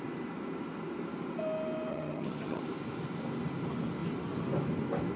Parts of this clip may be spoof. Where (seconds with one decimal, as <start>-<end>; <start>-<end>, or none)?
1.9-2.6